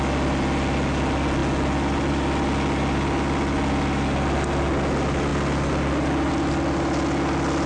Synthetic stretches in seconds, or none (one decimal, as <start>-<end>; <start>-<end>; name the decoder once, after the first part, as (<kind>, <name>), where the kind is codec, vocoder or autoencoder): none